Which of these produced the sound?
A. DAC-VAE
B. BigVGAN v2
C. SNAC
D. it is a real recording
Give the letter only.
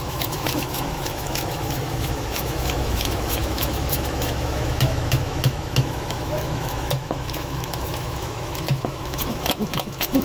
A